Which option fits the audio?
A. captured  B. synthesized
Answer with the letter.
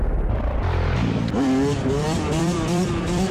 B